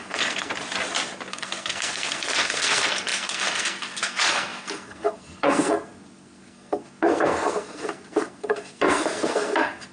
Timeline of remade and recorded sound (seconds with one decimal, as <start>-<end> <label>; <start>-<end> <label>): 0.0-0.5 remade; 0.5-1.3 recorded; 1.3-9.9 remade